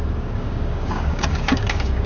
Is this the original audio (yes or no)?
no